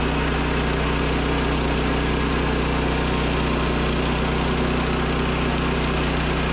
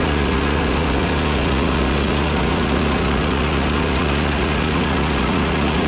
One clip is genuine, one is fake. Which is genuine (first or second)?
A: first